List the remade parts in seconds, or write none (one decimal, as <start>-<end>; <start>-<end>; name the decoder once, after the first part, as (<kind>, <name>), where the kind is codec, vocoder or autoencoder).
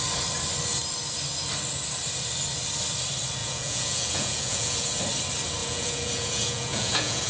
3.4-5.0 (vocoder, Vocos); 5.6-7.3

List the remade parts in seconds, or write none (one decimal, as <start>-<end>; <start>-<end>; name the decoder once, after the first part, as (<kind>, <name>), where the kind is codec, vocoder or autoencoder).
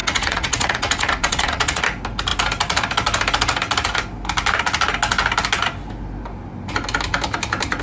0.0-1.8 (vocoder, Vocos)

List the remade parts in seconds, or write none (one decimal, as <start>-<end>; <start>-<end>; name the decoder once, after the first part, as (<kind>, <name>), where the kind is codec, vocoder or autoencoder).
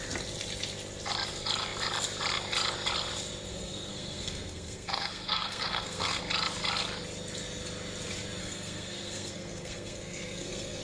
3.5-6.2 (codec, SNAC); 8.4-10.8